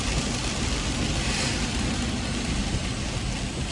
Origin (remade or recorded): recorded